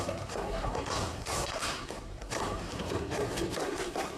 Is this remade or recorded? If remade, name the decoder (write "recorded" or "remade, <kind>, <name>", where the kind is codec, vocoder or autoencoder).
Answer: remade, codec, SNAC